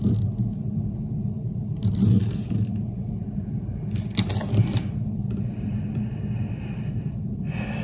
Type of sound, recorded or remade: recorded